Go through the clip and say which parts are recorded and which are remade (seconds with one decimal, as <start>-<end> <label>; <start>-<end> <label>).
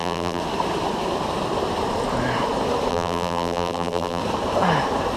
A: 0.0-0.4 remade; 0.4-2.9 recorded; 2.9-4.2 remade; 4.2-5.2 recorded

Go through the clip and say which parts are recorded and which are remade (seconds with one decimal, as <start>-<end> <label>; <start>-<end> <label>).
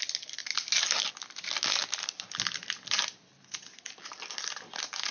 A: 0.0-5.1 recorded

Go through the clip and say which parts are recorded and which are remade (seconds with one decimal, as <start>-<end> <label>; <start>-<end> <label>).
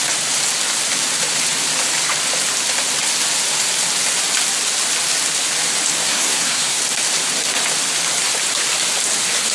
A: 0.0-6.0 recorded; 6.0-6.8 remade; 6.8-9.5 recorded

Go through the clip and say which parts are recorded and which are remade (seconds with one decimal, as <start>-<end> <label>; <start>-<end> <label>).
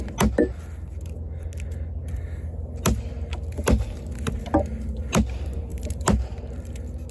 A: 0.0-5.7 recorded; 5.7-6.5 remade; 6.5-7.1 recorded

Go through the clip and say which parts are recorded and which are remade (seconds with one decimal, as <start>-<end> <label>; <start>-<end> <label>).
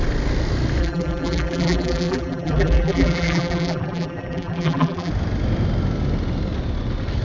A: 0.0-0.8 recorded; 0.8-5.1 remade; 5.1-7.2 recorded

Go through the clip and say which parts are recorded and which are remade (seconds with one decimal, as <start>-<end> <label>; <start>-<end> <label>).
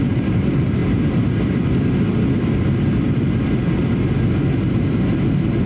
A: 0.0-5.7 recorded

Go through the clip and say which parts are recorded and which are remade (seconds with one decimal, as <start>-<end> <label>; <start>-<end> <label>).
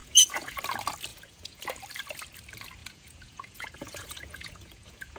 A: 0.0-0.6 remade; 0.6-1.1 recorded; 1.1-1.6 remade; 1.6-2.8 recorded; 2.8-5.2 remade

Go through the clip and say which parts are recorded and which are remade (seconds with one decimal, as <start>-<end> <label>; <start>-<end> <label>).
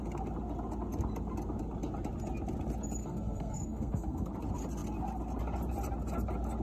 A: 0.0-3.0 recorded; 3.0-4.3 remade; 4.3-6.6 recorded